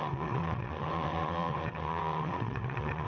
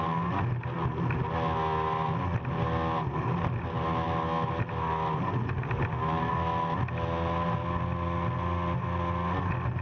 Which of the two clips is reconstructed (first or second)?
first